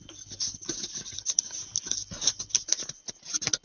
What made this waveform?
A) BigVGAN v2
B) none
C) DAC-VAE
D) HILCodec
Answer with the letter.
B